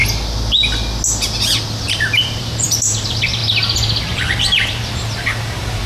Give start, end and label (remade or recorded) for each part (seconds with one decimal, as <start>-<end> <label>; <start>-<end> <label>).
0.0-1.7 recorded; 1.7-3.4 remade; 3.4-4.1 recorded; 4.1-5.9 remade